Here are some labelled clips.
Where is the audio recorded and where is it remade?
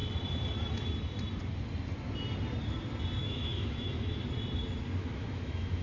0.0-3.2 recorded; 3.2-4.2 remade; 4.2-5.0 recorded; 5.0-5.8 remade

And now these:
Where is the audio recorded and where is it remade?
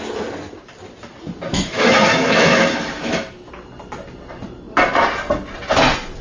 0.0-1.5 recorded; 1.5-3.5 remade; 3.5-6.2 recorded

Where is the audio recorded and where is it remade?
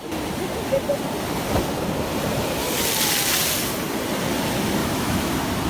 0.0-4.8 recorded; 4.8-5.3 remade; 5.3-5.7 recorded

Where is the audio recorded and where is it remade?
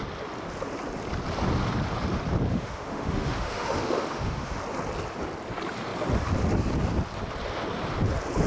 0.0-2.5 recorded; 2.5-4.6 remade; 4.6-8.5 recorded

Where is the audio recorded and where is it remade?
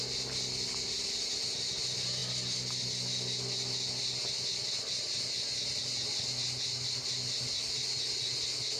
0.0-8.8 recorded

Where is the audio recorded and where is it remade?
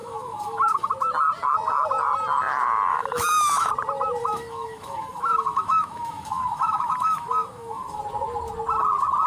0.0-0.9 remade; 0.9-2.9 recorded; 2.9-3.7 remade; 3.7-4.2 recorded; 4.2-8.0 remade; 8.0-9.3 recorded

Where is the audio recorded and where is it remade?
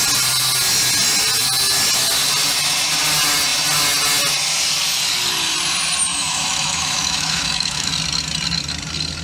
0.0-6.1 recorded; 6.1-7.9 remade; 7.9-9.2 recorded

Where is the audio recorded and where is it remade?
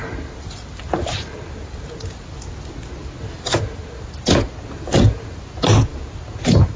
0.0-6.8 recorded